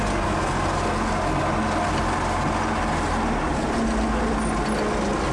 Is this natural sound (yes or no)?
yes